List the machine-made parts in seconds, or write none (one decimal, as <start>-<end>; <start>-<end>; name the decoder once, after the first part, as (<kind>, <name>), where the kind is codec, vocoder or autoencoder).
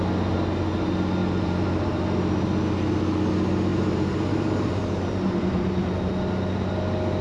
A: 1.2-2.0 (vocoder, BigVGAN v2); 3.7-5.4